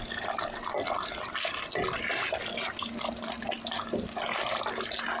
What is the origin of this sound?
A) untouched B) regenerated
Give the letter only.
A